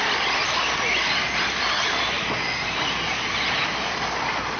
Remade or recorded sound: recorded